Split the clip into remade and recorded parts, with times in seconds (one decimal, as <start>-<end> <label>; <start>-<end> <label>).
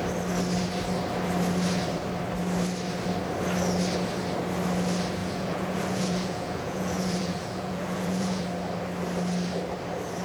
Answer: 0.0-5.2 recorded; 5.2-8.4 remade; 8.4-10.2 recorded